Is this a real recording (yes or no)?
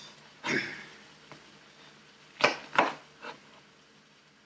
yes